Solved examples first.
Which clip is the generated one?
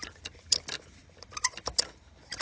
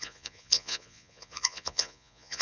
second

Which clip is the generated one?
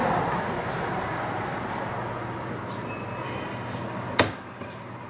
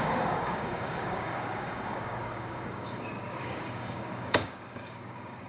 second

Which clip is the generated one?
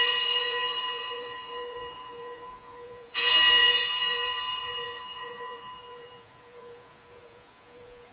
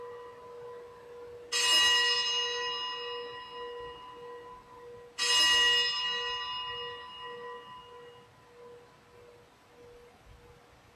first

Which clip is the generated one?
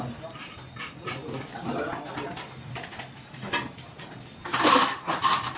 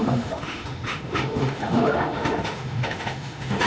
second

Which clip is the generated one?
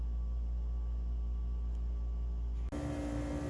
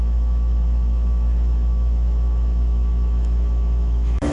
second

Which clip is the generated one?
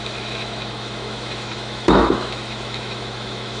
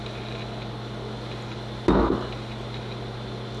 first